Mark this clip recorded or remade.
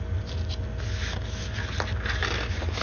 recorded